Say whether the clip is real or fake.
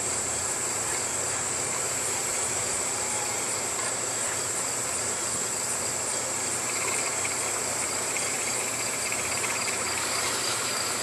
fake